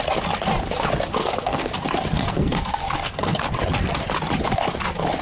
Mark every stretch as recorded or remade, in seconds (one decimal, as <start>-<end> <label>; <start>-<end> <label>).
0.0-1.2 recorded; 1.2-1.7 remade; 1.7-2.2 recorded; 2.2-3.5 remade; 3.5-5.2 recorded